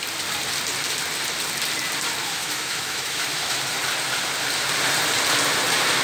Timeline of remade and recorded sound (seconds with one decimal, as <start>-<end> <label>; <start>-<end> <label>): 0.0-2.2 recorded; 2.2-3.6 remade; 3.6-6.0 recorded